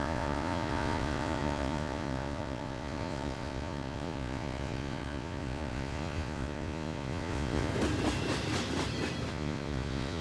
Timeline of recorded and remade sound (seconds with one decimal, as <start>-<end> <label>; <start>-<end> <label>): 0.0-7.7 remade; 7.7-9.3 recorded; 9.3-10.2 remade